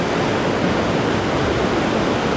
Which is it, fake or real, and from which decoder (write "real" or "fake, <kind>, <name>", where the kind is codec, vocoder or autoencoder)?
real